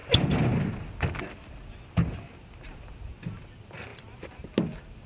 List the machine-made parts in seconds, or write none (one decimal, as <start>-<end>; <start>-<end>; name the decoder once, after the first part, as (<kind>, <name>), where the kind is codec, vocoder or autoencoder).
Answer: none